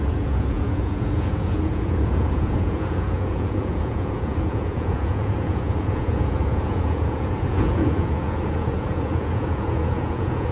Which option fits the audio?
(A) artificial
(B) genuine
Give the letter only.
A